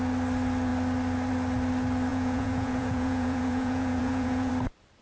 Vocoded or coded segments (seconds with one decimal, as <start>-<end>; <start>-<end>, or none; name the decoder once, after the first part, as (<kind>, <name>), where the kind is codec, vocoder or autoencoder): 2.1-4.5 (vocoder, Vocos)